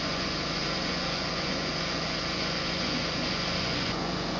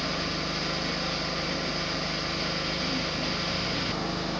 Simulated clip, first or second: first